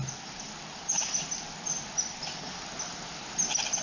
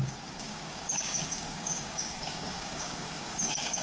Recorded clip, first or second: first